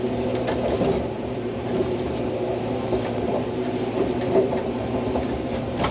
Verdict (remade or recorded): remade